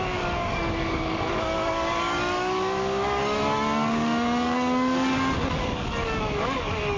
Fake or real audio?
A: fake